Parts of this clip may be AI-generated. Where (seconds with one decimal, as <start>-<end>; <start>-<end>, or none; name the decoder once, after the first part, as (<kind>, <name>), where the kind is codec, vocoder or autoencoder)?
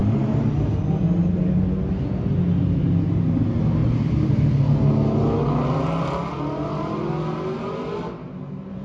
0.0-1.0 (vocoder, BigVGAN v2); 3.8-4.9